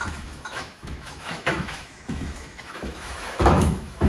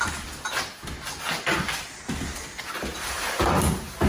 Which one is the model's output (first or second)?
first